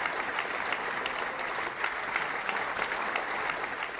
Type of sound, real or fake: real